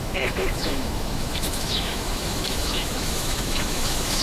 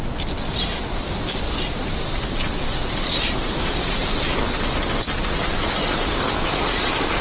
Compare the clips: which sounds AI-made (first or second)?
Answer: first